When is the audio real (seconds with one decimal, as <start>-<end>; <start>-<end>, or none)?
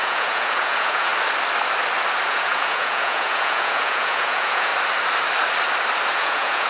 1.1-2.3; 4.7-6.1